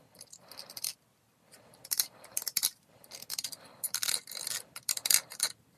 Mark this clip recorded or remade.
remade